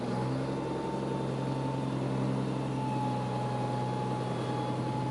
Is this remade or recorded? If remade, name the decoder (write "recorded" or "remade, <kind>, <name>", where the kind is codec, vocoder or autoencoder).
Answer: recorded